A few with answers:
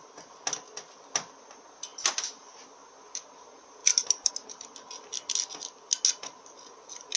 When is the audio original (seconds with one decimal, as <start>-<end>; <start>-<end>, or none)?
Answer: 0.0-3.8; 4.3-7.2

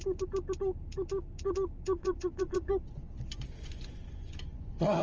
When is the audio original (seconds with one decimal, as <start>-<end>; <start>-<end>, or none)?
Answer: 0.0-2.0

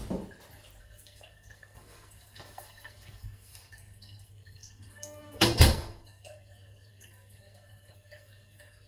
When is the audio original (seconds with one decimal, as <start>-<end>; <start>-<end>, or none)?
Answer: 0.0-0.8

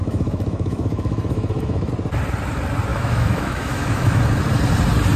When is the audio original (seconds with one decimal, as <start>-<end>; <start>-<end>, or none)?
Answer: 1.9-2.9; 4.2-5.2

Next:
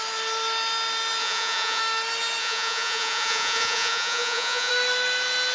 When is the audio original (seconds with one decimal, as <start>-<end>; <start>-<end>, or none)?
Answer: 0.0-1.2; 1.8-2.4; 4.7-5.5